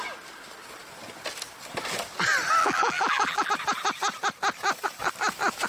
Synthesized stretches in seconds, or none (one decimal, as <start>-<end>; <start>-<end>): 2.6-3.5